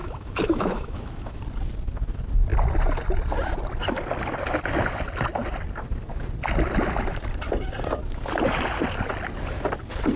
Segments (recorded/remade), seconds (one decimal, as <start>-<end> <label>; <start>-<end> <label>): 0.0-1.4 remade; 1.4-10.2 recorded